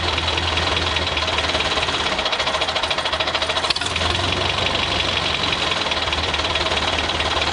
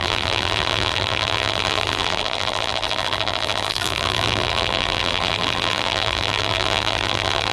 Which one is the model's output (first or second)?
second